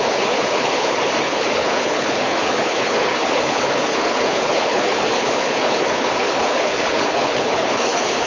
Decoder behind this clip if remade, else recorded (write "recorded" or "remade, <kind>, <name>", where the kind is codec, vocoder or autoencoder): remade, codec, HILCodec